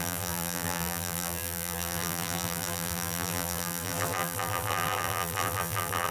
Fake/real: fake